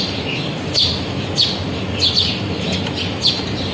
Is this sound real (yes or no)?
yes